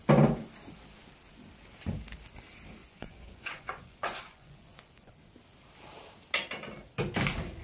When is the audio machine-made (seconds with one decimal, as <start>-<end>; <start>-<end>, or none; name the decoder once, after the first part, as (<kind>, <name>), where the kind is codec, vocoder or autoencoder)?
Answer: 2.8-5.1 (vocoder, Vocos)